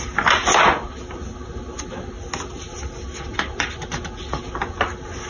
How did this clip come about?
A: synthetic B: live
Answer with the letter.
B